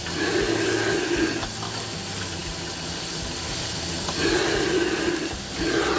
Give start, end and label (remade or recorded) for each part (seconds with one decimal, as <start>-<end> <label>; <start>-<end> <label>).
0.0-6.0 recorded